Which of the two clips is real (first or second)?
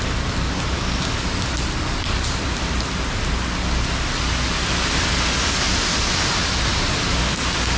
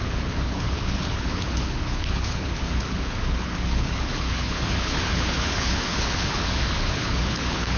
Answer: first